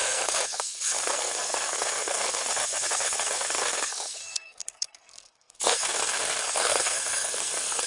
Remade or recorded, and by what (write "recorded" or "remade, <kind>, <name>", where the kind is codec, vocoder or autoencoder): remade, codec, SNAC